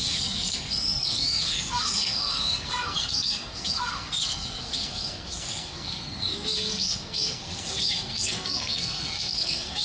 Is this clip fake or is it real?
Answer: fake